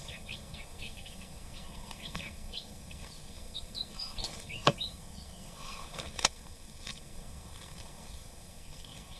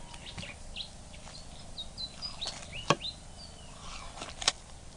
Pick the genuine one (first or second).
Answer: second